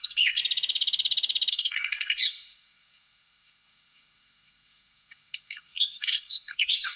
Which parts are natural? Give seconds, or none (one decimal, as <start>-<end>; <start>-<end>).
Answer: 0.4-1.5